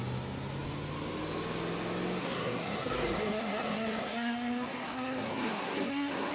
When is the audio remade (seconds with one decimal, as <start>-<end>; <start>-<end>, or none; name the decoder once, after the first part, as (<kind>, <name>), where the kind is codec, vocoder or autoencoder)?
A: 2.2-6.3 (codec, SNAC)